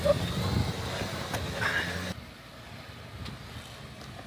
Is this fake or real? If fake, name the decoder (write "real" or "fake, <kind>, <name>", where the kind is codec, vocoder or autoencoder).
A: real